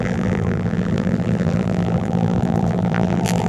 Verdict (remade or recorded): remade